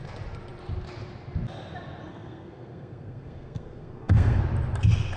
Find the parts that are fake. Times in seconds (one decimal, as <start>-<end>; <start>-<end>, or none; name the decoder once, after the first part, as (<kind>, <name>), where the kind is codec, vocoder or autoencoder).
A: 2.1-4.4 (codec, SNAC)